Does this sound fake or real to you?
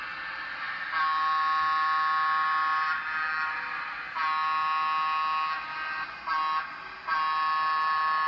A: real